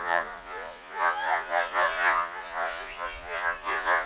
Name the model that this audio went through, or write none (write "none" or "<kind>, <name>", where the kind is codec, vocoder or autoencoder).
vocoder, Vocos